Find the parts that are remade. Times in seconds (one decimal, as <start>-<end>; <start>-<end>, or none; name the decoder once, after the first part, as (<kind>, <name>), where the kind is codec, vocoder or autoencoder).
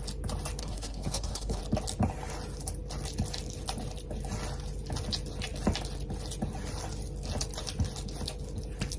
0.6-1.6 (codec, SNAC)